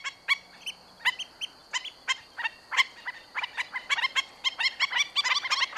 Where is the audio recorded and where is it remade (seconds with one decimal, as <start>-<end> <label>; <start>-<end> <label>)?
0.0-5.8 recorded